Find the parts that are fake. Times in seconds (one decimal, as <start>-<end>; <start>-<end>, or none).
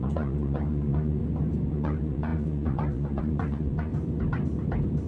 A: 0.0-1.2; 1.7-3.9